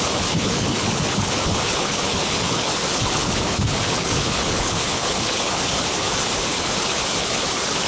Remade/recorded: remade